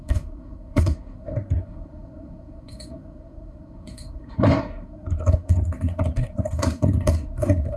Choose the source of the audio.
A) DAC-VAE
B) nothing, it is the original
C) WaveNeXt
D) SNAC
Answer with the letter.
D